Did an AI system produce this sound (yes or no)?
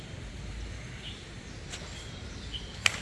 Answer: no